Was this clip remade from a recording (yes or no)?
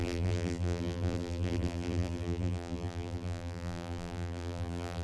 yes